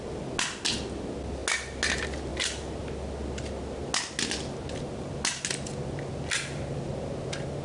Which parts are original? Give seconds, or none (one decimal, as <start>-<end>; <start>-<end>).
0.0-7.6